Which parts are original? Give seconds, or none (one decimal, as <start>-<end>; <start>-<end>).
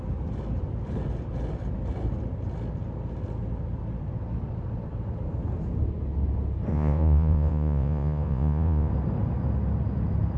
0.0-6.7; 8.9-10.4